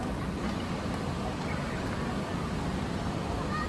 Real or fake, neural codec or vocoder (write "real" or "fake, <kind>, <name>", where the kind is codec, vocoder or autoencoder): real